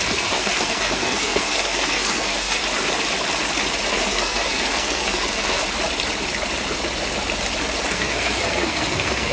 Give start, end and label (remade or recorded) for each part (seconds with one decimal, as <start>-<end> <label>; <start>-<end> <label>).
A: 0.0-2.6 remade; 2.6-3.9 recorded; 3.9-5.6 remade; 5.6-7.9 recorded; 7.9-9.3 remade